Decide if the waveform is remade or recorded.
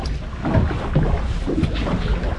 recorded